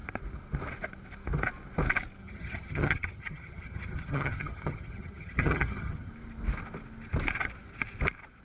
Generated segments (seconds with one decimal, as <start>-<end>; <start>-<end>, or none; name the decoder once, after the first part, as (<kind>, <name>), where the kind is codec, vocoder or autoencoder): 2.2-6.1 (vocoder, HiFi-GAN)